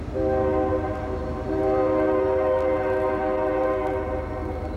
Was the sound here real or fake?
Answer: real